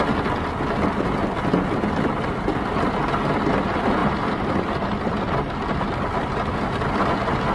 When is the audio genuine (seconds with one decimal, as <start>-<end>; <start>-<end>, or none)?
0.0-4.0; 5.4-7.5